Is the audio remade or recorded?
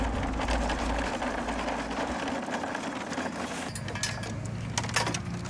recorded